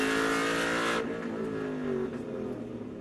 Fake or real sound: real